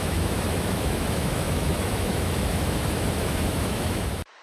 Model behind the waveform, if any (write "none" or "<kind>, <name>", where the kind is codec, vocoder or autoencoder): autoencoder, DAC-VAE